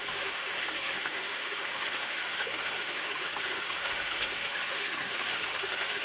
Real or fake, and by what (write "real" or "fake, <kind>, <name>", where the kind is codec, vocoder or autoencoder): fake, autoencoder, DAC-VAE